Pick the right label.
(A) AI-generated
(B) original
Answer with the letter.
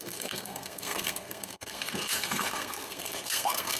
A